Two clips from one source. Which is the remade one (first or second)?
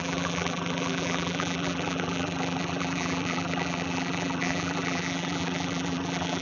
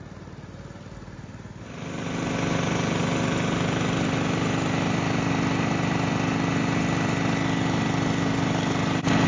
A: first